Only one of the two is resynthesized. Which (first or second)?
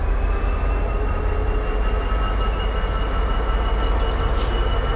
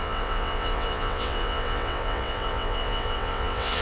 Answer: second